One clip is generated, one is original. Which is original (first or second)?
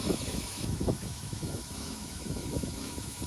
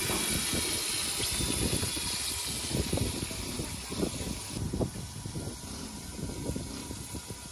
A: second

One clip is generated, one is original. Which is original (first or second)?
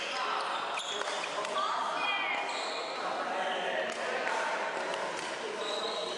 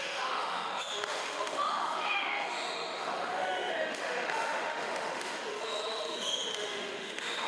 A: first